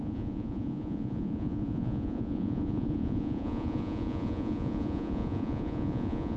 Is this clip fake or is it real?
fake